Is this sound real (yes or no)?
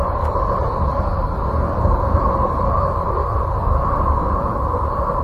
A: yes